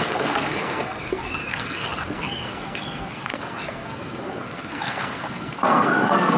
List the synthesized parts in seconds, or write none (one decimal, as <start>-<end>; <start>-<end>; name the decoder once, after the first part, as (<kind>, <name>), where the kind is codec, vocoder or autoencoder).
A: 0.0-6.4 (codec, SNAC)